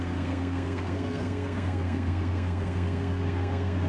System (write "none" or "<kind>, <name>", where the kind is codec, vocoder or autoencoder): codec, SNAC